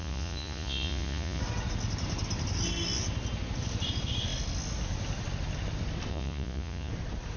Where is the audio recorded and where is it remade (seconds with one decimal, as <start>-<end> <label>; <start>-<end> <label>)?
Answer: 0.0-1.4 remade; 1.4-6.1 recorded; 6.1-6.9 remade; 6.9-7.4 recorded